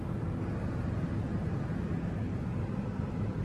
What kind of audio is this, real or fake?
real